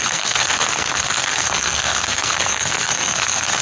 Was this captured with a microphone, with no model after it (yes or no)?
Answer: no